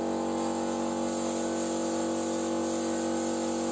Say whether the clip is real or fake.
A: real